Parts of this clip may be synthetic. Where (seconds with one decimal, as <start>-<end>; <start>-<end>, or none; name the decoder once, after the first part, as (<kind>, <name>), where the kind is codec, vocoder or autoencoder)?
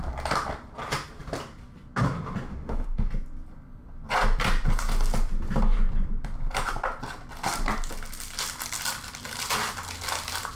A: 2.5-3.1 (autoencoder, DAC-VAE)